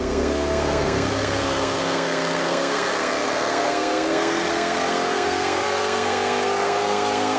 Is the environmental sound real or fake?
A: fake